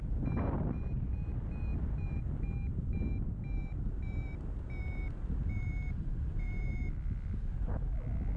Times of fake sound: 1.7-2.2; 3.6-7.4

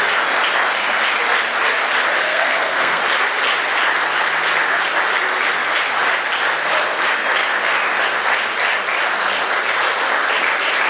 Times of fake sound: 2.2-3.0

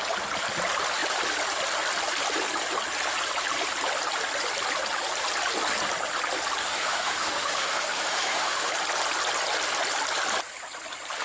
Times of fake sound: 6.6-8.7

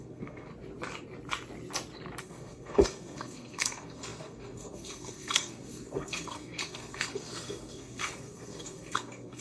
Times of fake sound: 0.0-0.5; 2.2-9.4

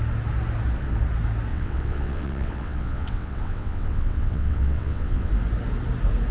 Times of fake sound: 1.5-5.3

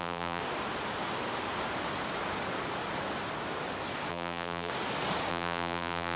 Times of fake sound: 0.0-0.4; 4.1-4.7; 5.3-6.2

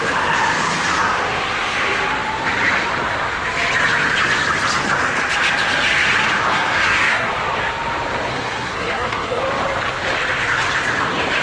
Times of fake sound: 6.5-7.3; 8.3-9.4

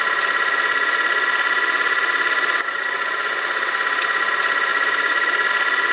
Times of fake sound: 4.7-5.5